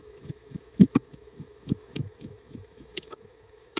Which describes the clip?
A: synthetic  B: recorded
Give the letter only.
A